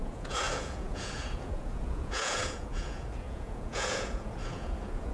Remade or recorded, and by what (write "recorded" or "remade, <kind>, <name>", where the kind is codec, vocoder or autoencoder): remade, vocoder, Vocos